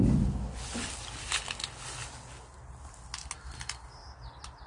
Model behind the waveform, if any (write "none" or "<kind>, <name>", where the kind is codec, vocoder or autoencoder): none